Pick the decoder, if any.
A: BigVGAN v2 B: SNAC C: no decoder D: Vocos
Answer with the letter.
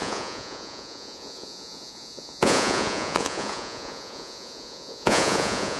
D